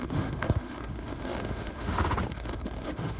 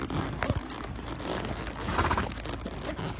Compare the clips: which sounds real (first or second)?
second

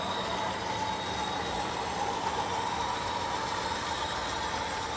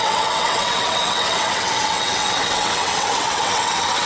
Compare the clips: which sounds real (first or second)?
first